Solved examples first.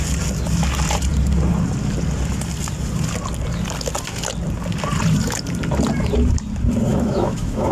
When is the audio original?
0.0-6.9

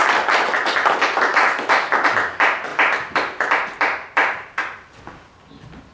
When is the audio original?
0.0-1.3; 1.9-5.9

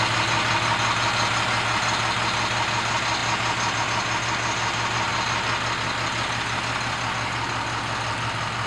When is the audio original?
0.0-8.7

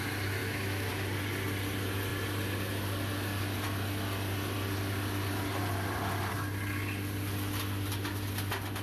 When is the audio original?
0.0-0.4; 0.9-8.8

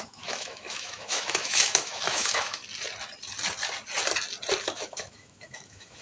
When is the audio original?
2.6-4.6

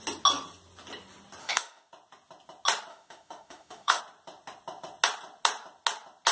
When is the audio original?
0.0-1.4; 1.9-2.9; 4.0-6.3